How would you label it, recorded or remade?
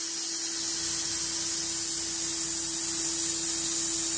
recorded